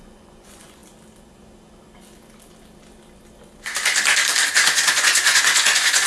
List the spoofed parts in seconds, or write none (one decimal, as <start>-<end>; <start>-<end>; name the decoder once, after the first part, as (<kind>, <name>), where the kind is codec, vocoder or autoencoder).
0.0-0.8 (vocoder, Vocos); 4.5-6.1